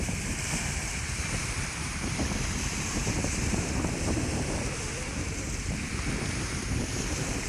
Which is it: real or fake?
fake